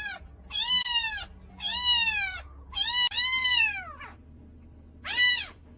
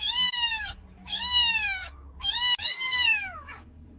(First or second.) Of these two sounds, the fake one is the second